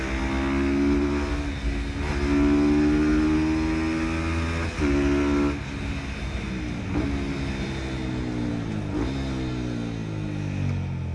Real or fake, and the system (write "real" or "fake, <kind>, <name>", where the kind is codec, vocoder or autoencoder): real